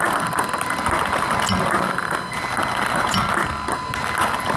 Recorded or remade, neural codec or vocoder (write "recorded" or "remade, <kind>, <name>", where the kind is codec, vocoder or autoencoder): recorded